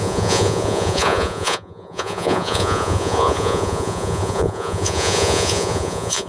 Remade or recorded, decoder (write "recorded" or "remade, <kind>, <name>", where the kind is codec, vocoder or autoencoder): remade, vocoder, Vocos